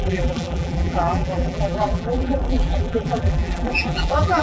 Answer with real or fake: fake